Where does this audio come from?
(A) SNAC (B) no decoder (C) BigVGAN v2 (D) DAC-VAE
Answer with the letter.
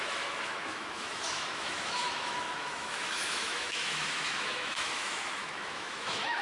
D